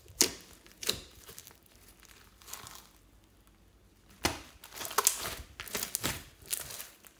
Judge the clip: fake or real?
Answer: real